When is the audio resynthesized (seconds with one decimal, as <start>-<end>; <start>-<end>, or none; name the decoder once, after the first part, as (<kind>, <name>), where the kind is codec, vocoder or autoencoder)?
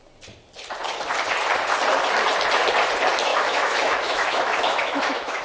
3.3-5.4 (autoencoder, DAC-VAE)